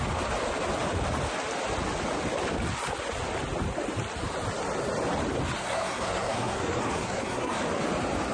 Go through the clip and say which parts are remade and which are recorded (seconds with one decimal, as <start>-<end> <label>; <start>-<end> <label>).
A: 0.0-5.6 recorded; 5.6-7.6 remade; 7.6-8.3 recorded